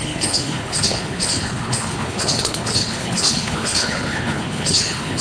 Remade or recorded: remade